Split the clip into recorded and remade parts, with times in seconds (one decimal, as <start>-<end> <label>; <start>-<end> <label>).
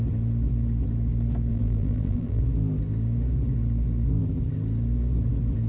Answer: 0.0-1.5 recorded; 1.5-2.4 remade; 2.4-5.7 recorded